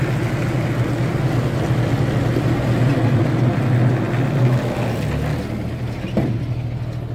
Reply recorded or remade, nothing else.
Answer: recorded